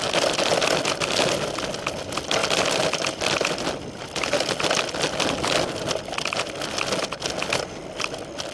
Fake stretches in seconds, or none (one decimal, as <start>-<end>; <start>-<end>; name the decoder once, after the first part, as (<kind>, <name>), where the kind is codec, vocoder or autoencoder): none